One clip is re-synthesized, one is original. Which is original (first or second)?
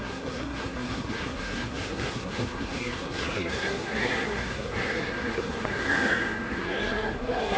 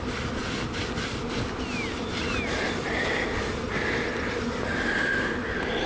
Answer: second